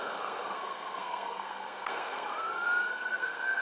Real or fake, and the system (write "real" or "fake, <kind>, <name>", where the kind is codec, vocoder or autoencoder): fake, codec, SNAC